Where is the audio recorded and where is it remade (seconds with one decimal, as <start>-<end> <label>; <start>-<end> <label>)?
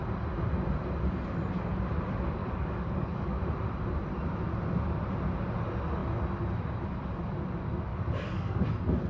0.0-2.4 recorded; 2.4-3.4 remade; 3.4-7.9 recorded; 7.9-8.7 remade; 8.7-9.1 recorded